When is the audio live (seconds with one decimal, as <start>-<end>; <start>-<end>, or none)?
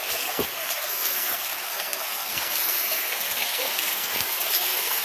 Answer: none